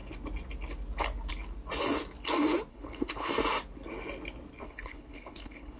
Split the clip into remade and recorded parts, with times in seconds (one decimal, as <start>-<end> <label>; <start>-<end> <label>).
0.0-2.7 recorded; 2.7-3.3 remade; 3.3-4.6 recorded; 4.6-5.8 remade